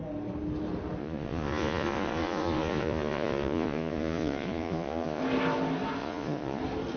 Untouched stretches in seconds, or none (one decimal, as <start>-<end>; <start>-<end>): 0.0-1.0; 5.2-6.0; 6.6-7.0